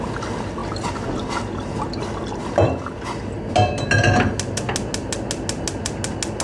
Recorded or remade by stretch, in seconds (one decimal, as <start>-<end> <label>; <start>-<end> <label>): 0.0-6.4 recorded